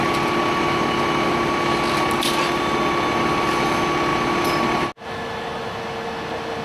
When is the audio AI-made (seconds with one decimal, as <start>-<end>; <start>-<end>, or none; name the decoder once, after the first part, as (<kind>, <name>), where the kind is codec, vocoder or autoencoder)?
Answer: none